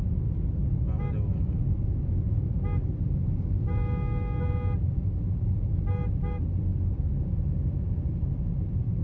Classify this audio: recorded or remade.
recorded